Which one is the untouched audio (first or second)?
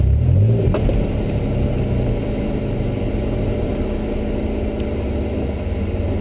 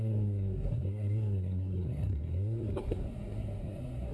first